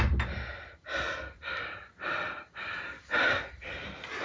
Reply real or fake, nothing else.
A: real